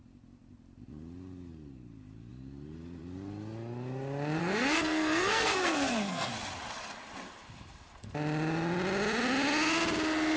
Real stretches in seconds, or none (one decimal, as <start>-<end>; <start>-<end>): 0.0-4.4; 6.3-10.4